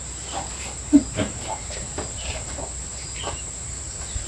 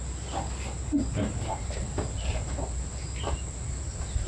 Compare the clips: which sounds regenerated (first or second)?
first